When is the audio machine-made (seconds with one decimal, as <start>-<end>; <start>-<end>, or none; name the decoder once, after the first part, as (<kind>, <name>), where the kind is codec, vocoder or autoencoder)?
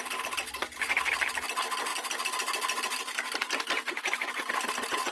none